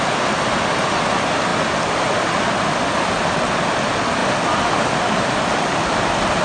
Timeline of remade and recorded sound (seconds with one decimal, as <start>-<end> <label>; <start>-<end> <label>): 0.0-6.4 recorded